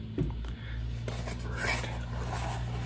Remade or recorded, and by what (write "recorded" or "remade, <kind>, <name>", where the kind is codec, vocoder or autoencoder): recorded